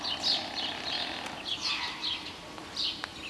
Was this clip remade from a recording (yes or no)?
no